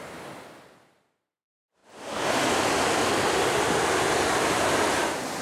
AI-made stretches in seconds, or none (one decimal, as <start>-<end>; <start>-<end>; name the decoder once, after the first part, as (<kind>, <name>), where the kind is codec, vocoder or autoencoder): none